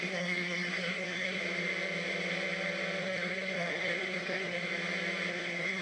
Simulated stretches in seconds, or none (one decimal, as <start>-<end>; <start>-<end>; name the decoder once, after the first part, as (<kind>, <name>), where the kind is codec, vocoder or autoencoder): 0.0-1.4 (codec, SNAC); 3.0-4.7; 5.3-5.8